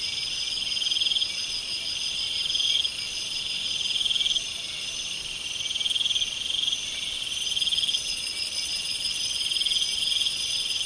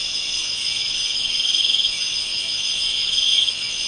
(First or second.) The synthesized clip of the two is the second